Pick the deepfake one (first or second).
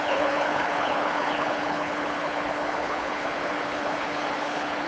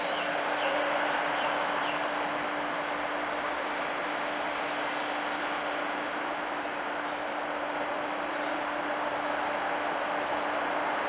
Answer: first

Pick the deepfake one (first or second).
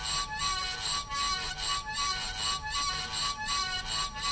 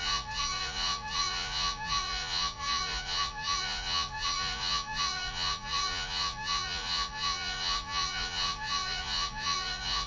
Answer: second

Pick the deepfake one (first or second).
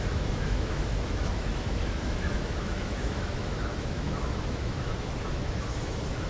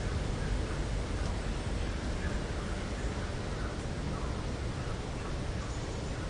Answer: first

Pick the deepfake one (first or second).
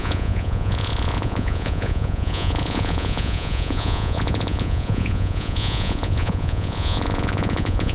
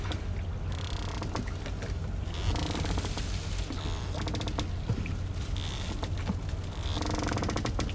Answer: first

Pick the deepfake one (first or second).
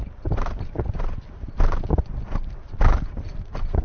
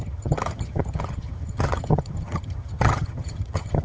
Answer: second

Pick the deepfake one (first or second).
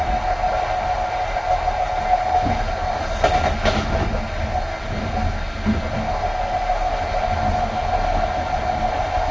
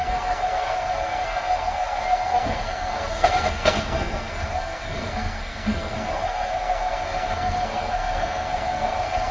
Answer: second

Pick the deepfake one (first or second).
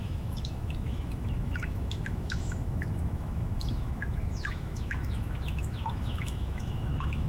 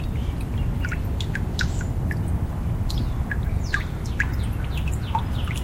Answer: first